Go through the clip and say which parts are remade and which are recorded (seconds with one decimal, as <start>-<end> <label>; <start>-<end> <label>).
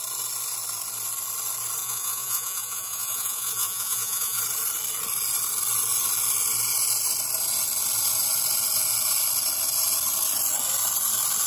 0.0-1.8 recorded; 1.8-4.4 remade; 4.4-11.5 recorded